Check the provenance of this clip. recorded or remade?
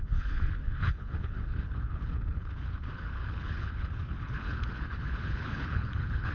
remade